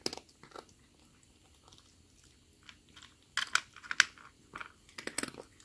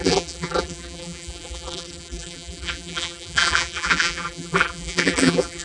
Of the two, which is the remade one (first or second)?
second